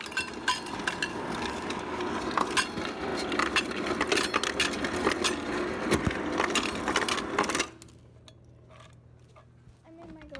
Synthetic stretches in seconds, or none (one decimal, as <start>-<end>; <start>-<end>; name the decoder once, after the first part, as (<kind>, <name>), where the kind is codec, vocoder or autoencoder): 1.1-2.0 (codec, DAC)